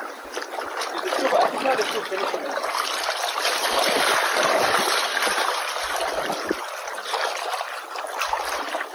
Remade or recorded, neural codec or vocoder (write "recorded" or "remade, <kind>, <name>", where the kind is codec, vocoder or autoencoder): remade, vocoder, BigVGAN v2